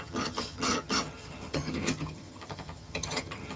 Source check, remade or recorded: remade